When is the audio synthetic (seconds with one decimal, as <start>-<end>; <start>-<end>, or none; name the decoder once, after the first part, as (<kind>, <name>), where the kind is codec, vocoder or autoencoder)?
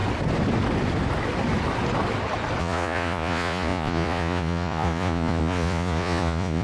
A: 2.6-6.6 (vocoder, Vocos)